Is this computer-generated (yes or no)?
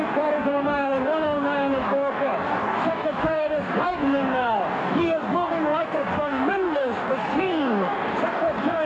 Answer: yes